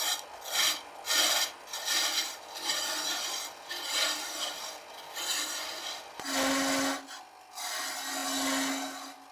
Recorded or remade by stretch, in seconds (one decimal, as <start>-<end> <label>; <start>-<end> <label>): 0.0-2.0 recorded; 2.0-3.3 remade; 3.3-9.3 recorded